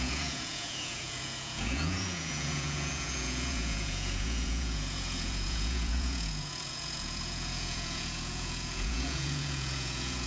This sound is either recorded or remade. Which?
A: remade